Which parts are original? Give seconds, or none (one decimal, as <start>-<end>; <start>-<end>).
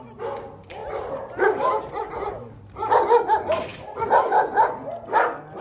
0.0-0.8; 2.1-5.6